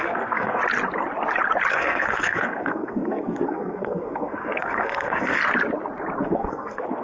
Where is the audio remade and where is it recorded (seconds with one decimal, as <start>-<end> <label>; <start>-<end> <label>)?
0.0-0.6 remade; 0.6-1.7 recorded; 1.7-5.4 remade; 5.4-6.2 recorded; 6.2-7.0 remade